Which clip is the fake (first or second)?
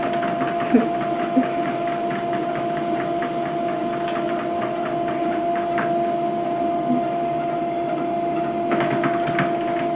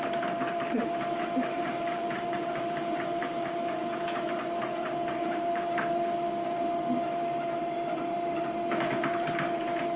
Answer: second